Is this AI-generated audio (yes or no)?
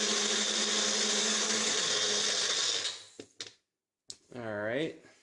no